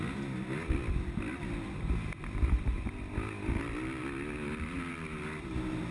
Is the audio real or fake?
real